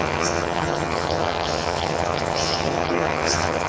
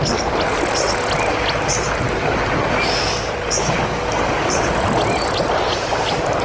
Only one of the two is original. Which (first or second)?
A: second